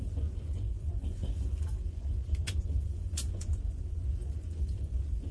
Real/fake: fake